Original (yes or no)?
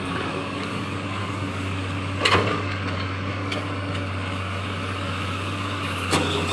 no